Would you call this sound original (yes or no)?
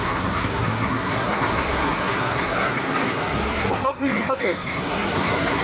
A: no